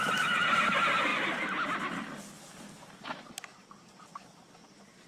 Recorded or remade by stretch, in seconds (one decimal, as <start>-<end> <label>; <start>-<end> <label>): 0.0-5.1 recorded